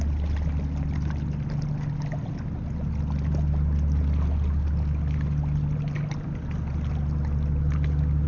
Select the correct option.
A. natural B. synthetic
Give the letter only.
A